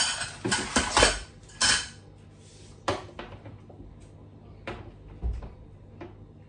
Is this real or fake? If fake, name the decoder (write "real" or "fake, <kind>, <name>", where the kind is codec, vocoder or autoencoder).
real